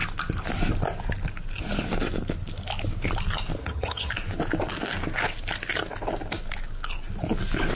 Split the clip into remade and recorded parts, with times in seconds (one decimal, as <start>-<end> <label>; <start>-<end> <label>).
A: 0.0-3.6 recorded; 3.6-4.1 remade; 4.1-7.8 recorded